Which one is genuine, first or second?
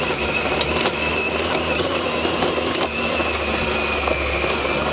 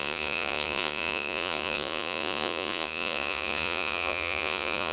first